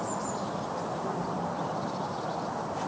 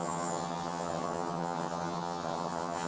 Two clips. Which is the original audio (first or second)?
first